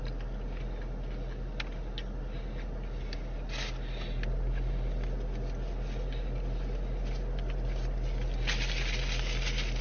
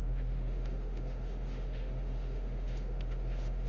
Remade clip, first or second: second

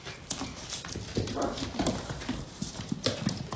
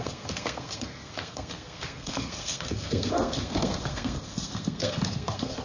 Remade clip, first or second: second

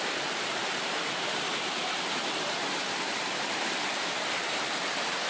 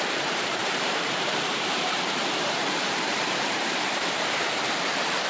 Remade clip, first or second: second